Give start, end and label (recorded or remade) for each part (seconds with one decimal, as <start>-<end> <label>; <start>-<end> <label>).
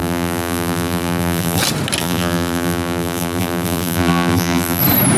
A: 0.0-1.6 remade; 1.6-2.0 recorded; 2.0-4.8 remade; 4.8-5.2 recorded